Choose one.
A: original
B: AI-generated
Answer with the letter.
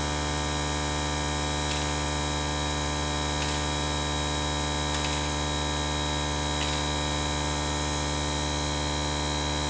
A